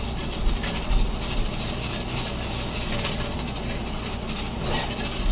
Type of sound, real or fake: real